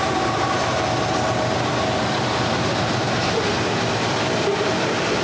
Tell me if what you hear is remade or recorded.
remade